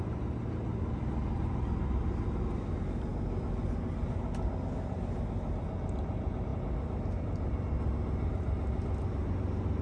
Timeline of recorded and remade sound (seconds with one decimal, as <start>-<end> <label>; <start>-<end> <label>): 0.0-9.8 recorded